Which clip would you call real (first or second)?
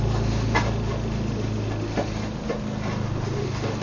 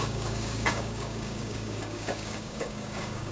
first